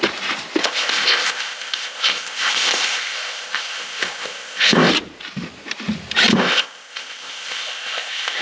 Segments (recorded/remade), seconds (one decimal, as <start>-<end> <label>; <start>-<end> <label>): 0.0-0.6 recorded; 0.6-4.9 remade; 4.9-6.3 recorded; 6.3-8.4 remade